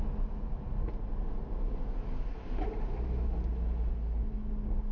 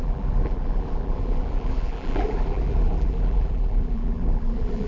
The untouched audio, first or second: first